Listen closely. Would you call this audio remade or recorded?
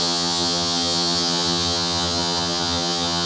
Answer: remade